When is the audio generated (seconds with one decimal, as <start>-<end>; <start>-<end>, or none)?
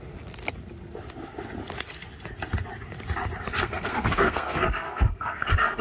3.6-5.8